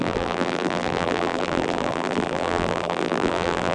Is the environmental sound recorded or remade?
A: remade